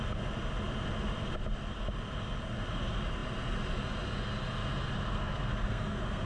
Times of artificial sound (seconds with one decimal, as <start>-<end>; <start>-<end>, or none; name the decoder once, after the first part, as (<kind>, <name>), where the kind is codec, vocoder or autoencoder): 5.2-6.3 (codec, SNAC)